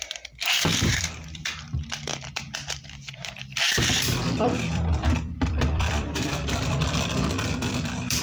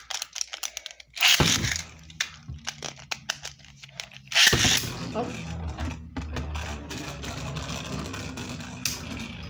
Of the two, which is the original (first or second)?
second